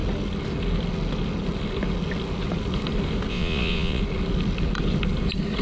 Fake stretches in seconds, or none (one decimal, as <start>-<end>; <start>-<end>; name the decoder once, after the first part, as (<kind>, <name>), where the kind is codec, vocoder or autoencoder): 3.3-4.0 (vocoder, Vocos)